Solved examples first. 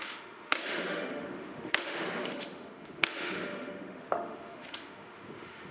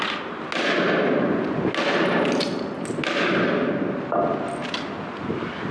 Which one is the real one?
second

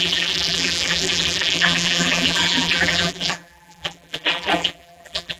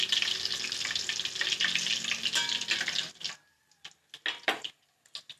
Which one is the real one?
second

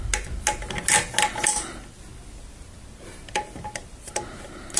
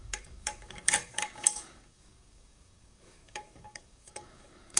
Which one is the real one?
first